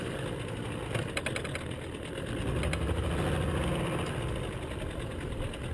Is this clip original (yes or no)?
yes